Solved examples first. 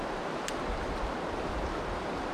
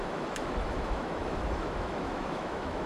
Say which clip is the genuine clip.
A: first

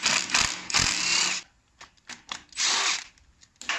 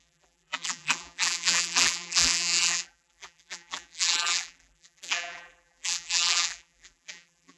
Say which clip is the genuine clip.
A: first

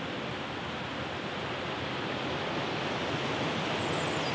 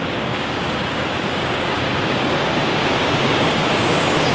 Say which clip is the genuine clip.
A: first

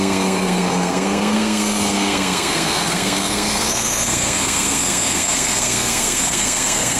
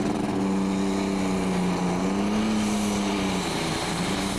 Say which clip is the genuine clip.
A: second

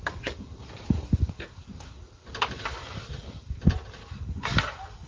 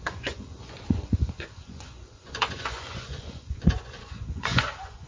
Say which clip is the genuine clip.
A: first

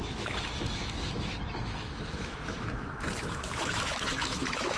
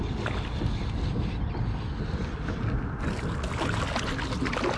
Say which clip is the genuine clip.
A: second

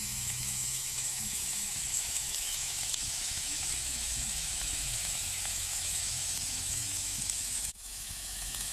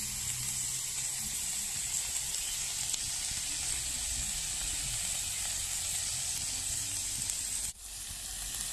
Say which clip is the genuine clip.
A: second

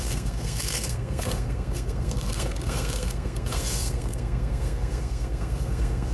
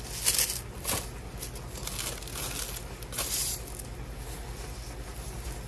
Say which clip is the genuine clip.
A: second